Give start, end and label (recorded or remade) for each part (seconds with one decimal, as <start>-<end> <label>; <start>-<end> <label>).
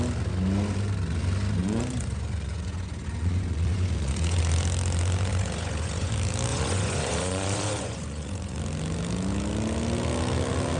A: 0.0-1.6 recorded; 1.6-4.4 remade; 4.4-5.3 recorded; 5.3-6.1 remade; 6.1-6.5 recorded; 6.5-8.6 remade; 8.6-10.8 recorded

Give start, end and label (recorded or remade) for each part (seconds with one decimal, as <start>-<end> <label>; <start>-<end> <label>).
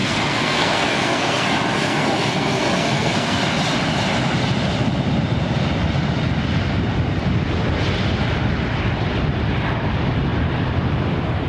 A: 0.0-3.4 remade; 3.4-11.5 recorded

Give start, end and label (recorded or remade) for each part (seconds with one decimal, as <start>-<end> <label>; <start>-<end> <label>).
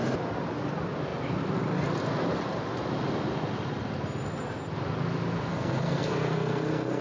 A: 0.0-5.5 recorded; 5.5-7.0 remade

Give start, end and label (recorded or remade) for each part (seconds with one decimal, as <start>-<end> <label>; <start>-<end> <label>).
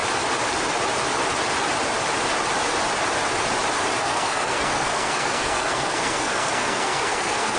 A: 0.0-4.0 recorded; 4.0-7.6 remade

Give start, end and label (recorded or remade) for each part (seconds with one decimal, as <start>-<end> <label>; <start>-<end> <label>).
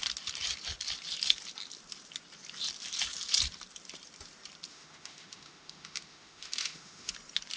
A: 0.0-4.7 recorded; 4.7-7.1 remade; 7.1-7.6 recorded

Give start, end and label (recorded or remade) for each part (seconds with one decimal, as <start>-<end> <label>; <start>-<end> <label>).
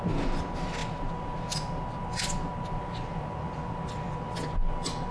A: 0.0-5.1 recorded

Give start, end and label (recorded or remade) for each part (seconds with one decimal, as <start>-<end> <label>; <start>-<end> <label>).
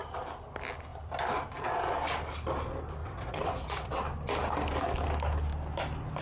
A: 0.0-3.0 recorded; 3.0-4.0 remade; 4.0-6.2 recorded